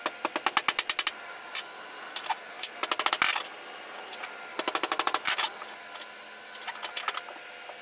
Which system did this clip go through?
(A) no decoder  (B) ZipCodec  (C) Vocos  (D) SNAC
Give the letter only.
A